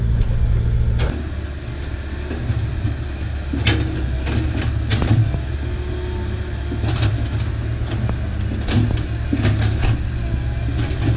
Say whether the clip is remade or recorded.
recorded